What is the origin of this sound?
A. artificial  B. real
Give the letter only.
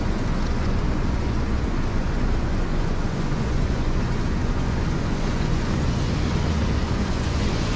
A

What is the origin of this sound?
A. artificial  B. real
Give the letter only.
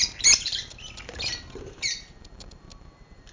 B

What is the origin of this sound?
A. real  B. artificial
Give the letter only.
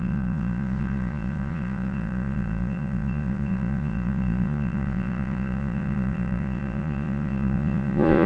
B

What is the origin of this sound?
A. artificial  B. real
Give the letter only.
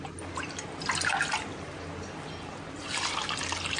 B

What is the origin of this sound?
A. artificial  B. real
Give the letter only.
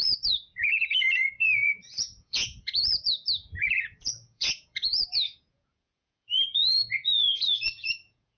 A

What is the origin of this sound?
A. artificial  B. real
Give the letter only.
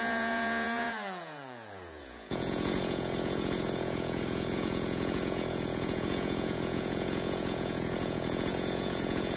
A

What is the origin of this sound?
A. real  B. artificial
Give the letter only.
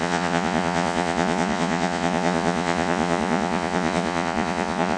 B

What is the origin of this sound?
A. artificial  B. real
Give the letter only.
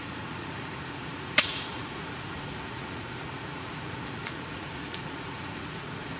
A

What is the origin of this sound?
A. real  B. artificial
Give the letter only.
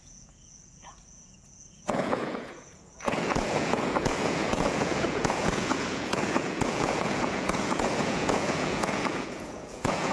B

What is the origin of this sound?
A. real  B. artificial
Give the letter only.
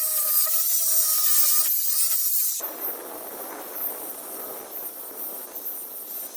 A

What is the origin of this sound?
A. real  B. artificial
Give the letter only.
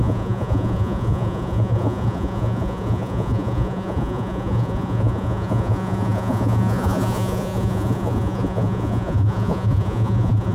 B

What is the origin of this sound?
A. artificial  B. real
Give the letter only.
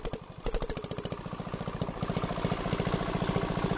B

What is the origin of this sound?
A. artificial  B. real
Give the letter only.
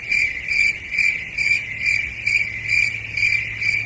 B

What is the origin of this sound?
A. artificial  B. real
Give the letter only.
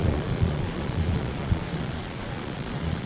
A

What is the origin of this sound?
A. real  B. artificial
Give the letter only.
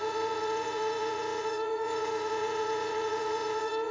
B